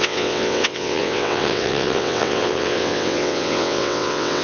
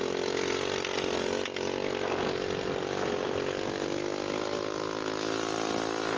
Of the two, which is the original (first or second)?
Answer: second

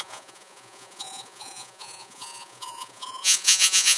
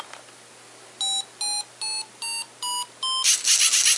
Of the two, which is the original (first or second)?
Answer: second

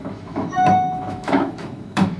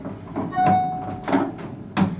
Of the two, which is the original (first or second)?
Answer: second